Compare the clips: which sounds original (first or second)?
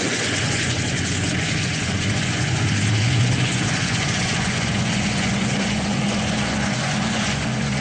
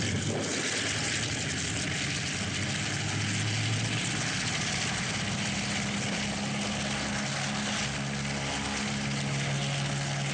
second